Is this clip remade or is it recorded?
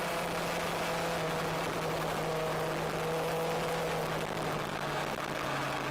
recorded